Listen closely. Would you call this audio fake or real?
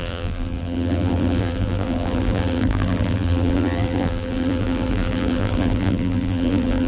fake